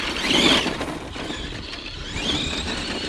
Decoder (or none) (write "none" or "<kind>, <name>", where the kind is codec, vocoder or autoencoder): none